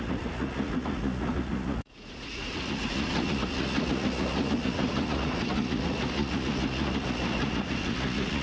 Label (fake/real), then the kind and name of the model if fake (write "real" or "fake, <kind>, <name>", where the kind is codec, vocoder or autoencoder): fake, vocoder, Vocos